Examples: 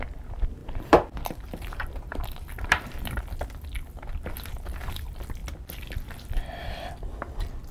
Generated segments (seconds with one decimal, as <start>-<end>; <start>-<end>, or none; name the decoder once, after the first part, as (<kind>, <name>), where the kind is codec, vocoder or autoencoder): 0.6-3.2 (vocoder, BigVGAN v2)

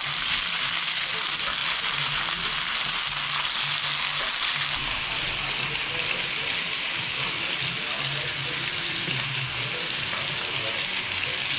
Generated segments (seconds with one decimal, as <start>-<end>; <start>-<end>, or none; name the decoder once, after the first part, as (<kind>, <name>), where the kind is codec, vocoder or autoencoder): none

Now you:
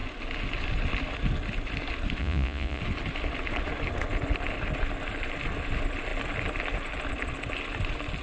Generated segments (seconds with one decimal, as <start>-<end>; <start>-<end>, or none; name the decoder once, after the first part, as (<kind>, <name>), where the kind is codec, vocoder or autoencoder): 2.2-2.8 (vocoder, Vocos)

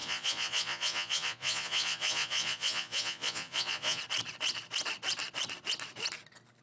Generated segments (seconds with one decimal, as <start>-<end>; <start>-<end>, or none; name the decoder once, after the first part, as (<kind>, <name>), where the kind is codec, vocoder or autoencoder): 0.0-4.0 (vocoder, Vocos)

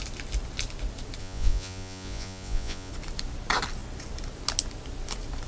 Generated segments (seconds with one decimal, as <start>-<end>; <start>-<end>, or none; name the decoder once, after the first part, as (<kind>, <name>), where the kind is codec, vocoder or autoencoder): 1.2-2.9 (vocoder, Vocos)

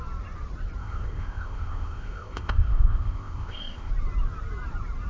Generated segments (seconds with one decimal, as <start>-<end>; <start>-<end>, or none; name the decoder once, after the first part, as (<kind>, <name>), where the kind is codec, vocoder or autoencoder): 0.8-3.9 (codec, ZipCodec)

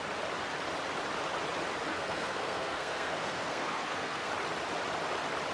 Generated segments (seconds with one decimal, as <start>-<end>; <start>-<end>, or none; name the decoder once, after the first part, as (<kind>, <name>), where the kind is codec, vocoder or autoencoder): 1.9-4.3 (codec, SNAC)

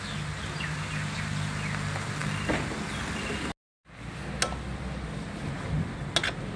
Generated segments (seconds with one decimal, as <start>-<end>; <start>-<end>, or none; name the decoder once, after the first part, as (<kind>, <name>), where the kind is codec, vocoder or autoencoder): none